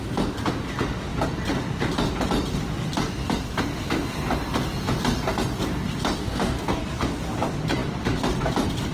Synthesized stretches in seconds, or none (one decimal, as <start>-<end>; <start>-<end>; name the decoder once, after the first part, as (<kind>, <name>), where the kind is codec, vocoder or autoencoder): 6.2-6.8 (codec, DAC)